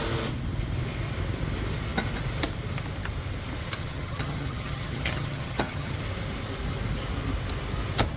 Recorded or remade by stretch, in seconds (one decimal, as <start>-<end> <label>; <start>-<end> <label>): 0.0-3.8 recorded; 3.8-6.0 remade; 6.0-8.2 recorded